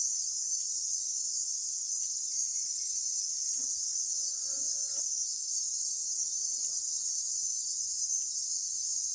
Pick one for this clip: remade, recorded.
remade